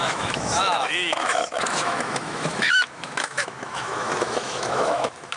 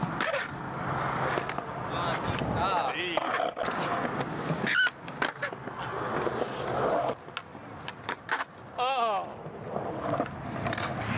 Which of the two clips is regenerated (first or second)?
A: first